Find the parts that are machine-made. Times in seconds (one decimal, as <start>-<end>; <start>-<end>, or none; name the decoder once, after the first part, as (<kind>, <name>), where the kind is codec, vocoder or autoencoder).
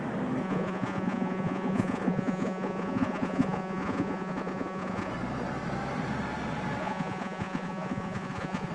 0.4-5.1 (vocoder, Vocos); 6.8-8.7